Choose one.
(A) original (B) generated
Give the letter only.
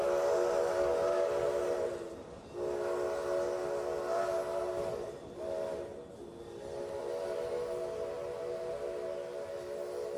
A